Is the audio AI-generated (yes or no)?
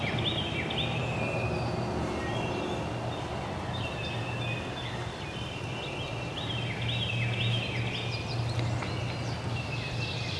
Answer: no